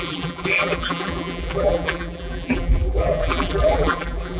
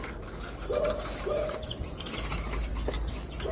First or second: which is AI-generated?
first